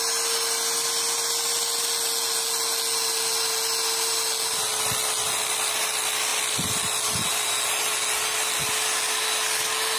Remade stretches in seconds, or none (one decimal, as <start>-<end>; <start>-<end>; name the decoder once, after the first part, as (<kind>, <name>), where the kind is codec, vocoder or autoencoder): none